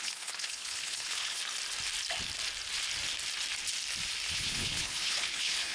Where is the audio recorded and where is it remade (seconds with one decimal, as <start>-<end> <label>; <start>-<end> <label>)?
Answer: 0.0-1.4 remade; 1.4-4.3 recorded; 4.3-5.7 remade